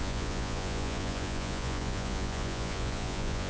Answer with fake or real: fake